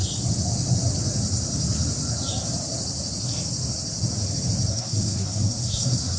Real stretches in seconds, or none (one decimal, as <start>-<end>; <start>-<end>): 0.0-4.7